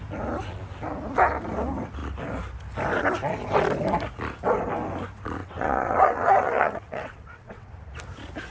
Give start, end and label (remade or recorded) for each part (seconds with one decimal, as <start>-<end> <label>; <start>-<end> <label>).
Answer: 0.0-5.4 recorded; 5.4-7.7 remade; 7.7-8.5 recorded